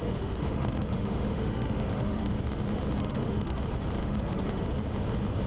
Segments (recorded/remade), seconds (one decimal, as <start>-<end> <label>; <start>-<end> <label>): 0.0-2.3 remade; 2.3-3.0 recorded; 3.0-3.6 remade; 3.6-4.0 recorded; 4.0-4.7 remade; 4.7-5.5 recorded